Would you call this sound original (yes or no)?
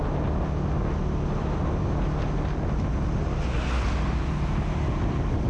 yes